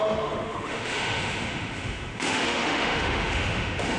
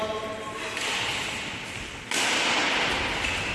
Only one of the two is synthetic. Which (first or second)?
first